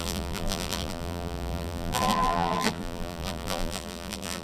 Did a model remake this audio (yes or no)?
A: yes